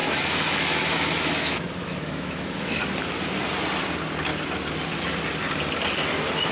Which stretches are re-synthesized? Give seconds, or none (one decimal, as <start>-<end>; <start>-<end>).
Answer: 0.0-2.8